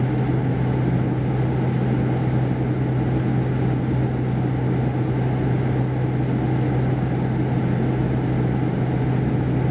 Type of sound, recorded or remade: recorded